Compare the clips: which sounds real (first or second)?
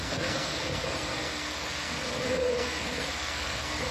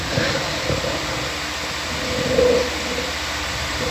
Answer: second